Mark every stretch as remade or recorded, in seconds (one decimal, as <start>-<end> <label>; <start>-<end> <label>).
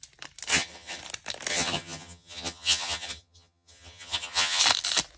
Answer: 0.0-0.5 recorded; 0.5-1.0 remade; 1.0-1.5 recorded; 1.5-4.6 remade; 4.6-5.2 recorded